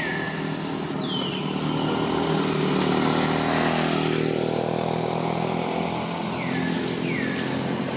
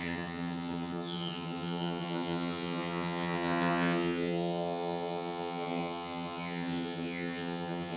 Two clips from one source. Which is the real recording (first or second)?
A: first